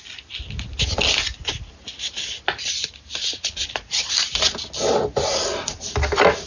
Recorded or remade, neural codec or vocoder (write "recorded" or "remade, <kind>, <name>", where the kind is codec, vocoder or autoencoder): recorded